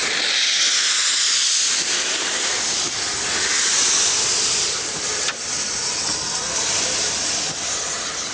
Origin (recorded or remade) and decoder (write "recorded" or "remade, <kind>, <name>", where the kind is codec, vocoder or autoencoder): recorded